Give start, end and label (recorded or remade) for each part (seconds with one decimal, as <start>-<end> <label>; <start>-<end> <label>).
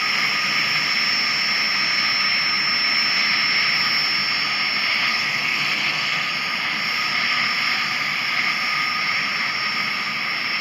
0.0-5.1 recorded; 5.1-6.3 remade; 6.3-10.6 recorded